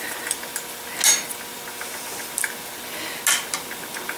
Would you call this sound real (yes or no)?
yes